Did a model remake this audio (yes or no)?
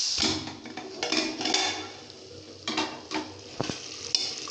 no